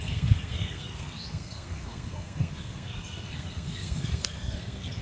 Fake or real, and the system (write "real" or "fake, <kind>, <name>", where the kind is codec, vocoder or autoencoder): fake, codec, SNAC